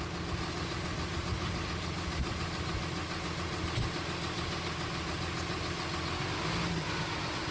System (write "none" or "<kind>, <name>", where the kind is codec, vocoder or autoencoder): none